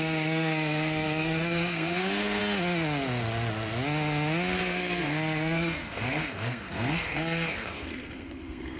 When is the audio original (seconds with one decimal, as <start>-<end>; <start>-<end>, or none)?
2.4-4.6

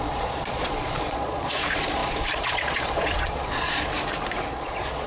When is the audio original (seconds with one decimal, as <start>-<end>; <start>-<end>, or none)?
3.9-4.5

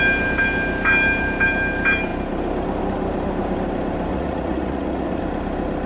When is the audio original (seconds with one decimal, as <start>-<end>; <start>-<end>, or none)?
0.0-4.1; 5.2-5.9

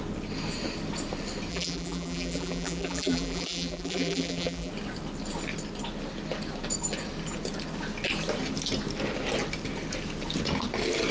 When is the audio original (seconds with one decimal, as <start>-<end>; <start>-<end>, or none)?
0.0-1.5; 4.7-11.1